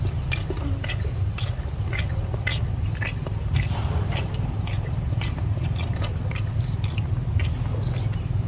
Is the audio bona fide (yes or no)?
yes